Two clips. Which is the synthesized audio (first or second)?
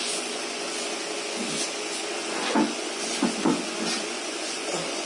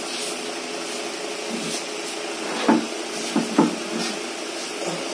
first